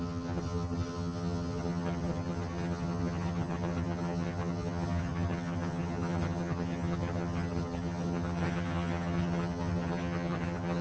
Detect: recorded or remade remade